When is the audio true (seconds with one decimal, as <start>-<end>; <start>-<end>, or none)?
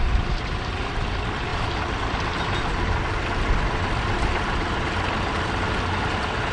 0.0-6.5